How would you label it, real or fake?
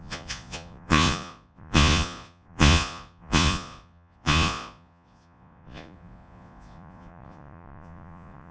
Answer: fake